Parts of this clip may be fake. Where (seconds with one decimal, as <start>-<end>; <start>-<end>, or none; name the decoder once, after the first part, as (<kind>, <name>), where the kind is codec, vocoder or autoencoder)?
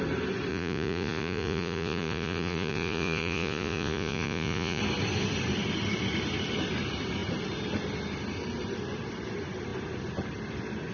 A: 0.5-4.8 (vocoder, Vocos)